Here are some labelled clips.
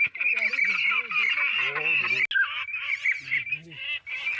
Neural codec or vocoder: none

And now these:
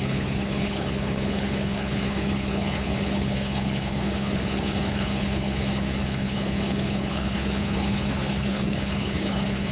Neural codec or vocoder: codec, HILCodec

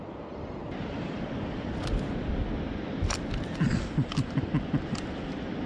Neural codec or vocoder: none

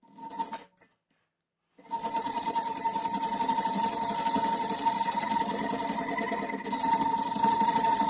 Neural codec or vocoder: none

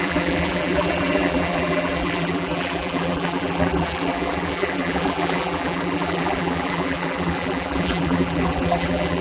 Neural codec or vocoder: vocoder, BigVGAN v2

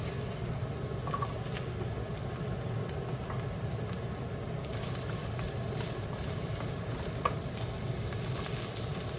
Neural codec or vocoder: none